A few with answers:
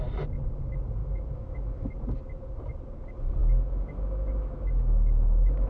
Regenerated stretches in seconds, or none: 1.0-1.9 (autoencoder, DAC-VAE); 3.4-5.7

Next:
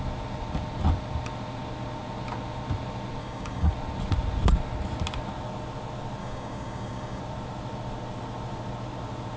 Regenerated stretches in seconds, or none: 3.2-3.7 (codec, DAC); 6.2-7.2

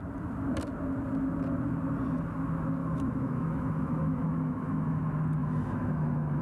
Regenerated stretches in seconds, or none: 2.8-5.0 (autoencoder, DAC-VAE); 5.4-6.4

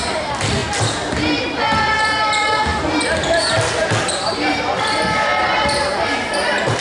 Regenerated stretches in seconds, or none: 0.0-0.6 (vocoder, BigVGAN v2); 2.0-6.8

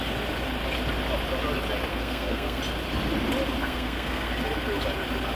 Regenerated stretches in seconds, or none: 1.9-2.6 (codec, SNAC); 3.6-4.3

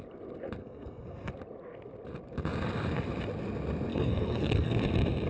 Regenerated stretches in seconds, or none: 0.6-1.3 (codec, SNAC); 3.9-4.8